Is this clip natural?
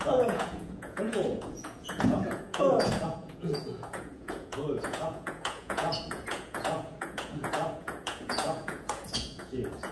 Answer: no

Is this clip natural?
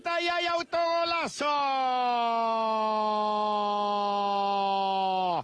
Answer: yes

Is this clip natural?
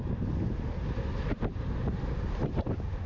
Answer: yes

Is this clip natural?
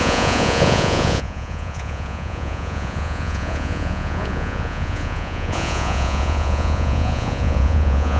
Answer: no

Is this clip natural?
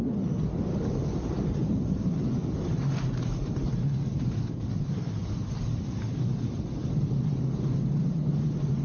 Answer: yes